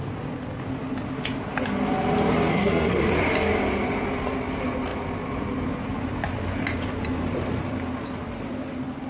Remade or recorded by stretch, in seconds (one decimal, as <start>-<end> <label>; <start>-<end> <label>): 0.0-2.5 recorded; 2.5-3.1 remade; 3.1-9.1 recorded